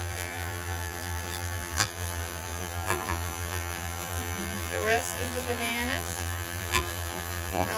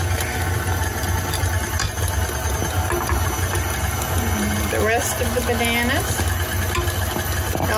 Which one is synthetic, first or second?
first